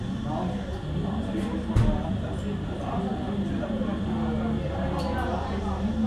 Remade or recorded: recorded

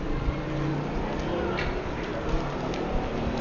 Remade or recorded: recorded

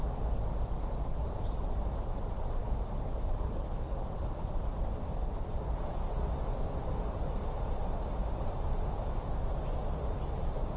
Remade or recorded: recorded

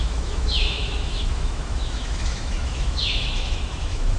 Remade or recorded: remade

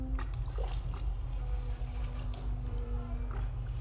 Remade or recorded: recorded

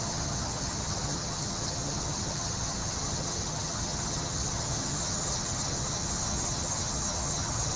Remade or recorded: remade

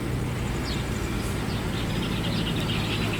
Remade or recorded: recorded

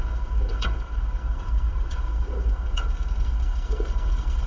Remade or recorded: remade